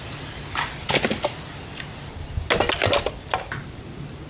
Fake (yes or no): no